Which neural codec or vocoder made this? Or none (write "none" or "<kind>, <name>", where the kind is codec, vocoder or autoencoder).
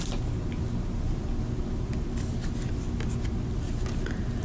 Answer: none